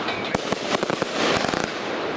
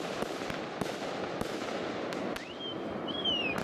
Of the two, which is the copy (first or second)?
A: first